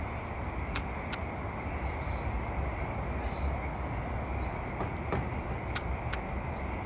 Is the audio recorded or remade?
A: recorded